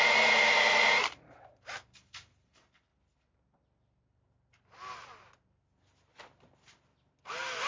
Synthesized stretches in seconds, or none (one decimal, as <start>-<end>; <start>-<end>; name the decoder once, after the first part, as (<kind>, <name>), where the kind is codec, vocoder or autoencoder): 0.0-2.9 (vocoder, BigVGAN v2)